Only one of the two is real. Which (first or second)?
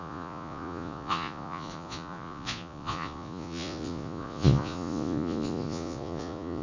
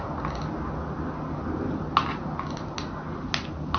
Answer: second